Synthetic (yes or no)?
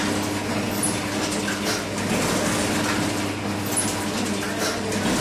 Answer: no